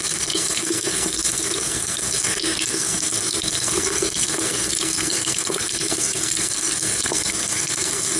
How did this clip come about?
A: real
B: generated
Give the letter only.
B